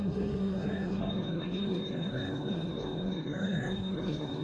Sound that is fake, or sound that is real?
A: fake